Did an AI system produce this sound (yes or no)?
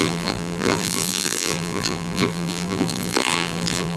yes